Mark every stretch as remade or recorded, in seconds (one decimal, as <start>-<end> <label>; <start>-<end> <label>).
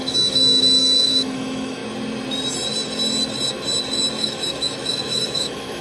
0.0-1.8 remade; 1.8-4.2 recorded; 4.2-5.8 remade